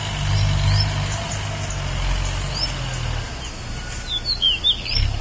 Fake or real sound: real